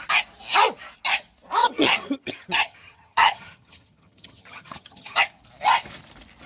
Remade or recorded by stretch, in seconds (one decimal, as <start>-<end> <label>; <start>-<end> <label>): 0.0-1.6 recorded; 1.6-5.2 remade; 5.2-6.5 recorded